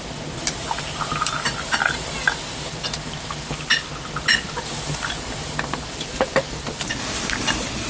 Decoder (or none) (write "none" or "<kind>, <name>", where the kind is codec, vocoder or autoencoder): none